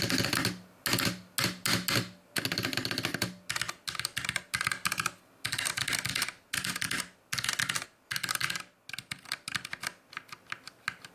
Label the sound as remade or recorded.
recorded